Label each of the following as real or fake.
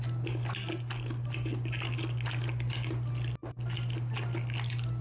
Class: real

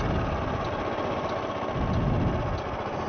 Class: real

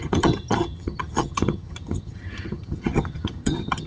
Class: fake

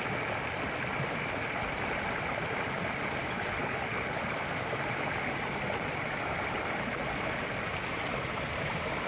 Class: real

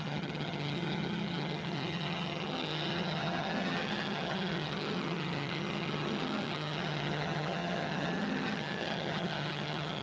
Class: fake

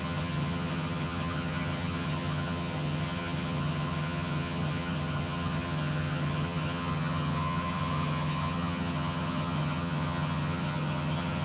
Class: fake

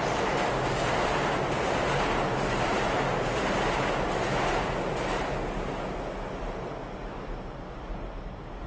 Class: real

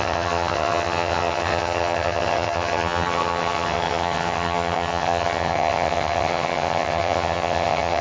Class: fake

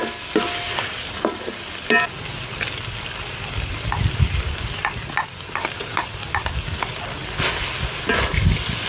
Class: real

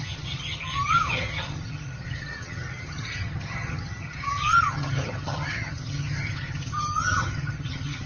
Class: fake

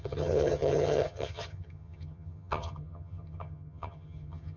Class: fake